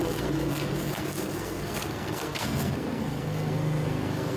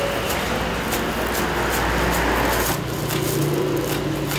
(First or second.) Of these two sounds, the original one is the second